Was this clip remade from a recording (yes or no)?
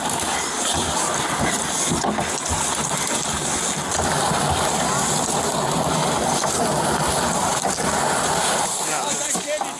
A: no